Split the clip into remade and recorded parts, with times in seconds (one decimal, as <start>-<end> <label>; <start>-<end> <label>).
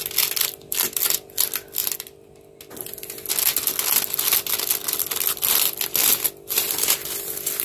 0.0-7.6 recorded